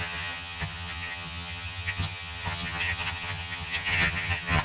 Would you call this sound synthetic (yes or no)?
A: yes